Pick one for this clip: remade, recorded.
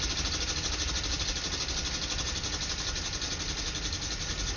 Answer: recorded